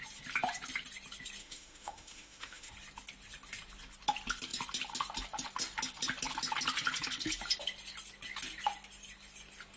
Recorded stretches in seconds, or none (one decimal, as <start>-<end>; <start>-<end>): 0.0-1.4; 2.7-9.8